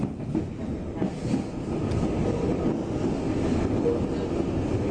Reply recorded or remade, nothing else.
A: recorded